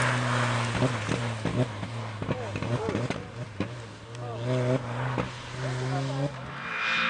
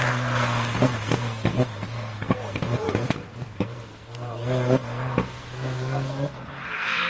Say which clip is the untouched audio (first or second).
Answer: first